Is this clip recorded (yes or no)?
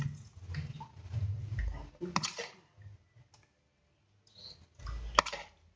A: yes